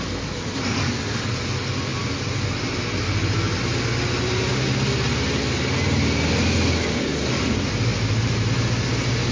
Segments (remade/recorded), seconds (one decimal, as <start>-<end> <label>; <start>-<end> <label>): 0.0-9.3 recorded